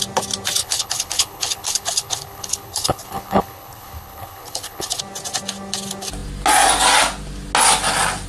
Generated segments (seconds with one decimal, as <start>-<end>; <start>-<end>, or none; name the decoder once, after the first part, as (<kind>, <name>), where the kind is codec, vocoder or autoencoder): 0.6-5.0 (codec, HILCodec)